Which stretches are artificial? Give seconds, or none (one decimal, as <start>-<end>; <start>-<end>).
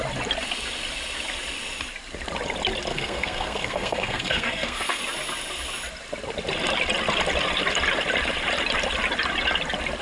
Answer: 2.9-5.0